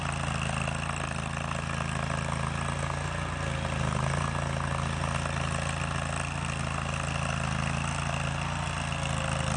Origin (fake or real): real